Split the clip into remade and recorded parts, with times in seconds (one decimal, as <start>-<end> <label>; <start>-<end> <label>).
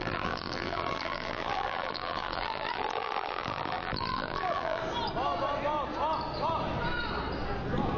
0.0-4.8 remade; 4.8-8.0 recorded